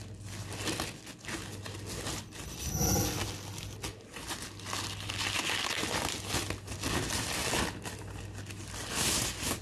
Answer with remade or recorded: recorded